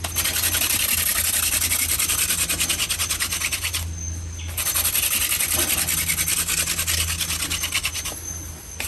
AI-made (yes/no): no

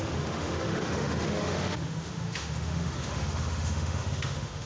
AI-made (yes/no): yes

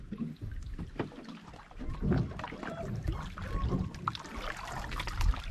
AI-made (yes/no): no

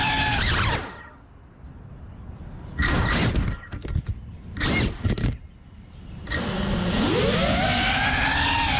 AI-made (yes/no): no